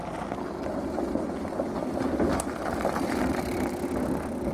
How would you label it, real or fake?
real